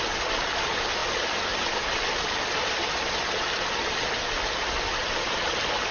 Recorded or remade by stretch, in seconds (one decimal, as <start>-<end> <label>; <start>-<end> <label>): 0.0-5.9 recorded